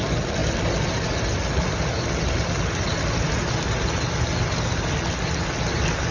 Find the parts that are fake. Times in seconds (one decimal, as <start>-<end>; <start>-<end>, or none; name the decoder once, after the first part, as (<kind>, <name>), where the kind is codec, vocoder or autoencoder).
none